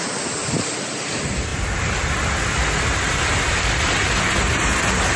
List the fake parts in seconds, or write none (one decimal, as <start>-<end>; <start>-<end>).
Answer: none